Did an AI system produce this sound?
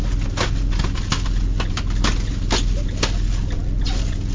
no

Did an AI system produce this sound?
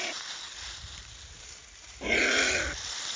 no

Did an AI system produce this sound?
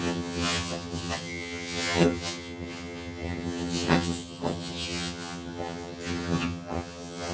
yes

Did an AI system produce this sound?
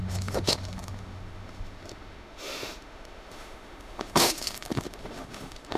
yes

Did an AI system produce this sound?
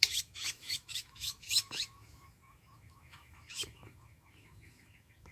yes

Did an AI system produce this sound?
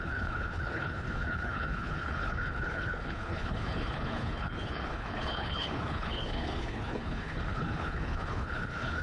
yes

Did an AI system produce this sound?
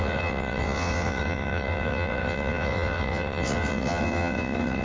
yes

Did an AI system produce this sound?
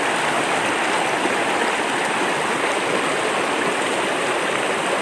no